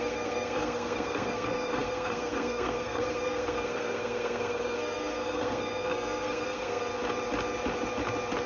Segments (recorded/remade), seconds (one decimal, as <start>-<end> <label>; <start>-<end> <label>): 0.0-6.9 remade; 6.9-8.5 recorded